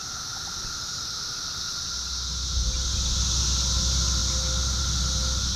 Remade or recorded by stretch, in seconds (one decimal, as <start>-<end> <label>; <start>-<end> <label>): 0.0-5.6 recorded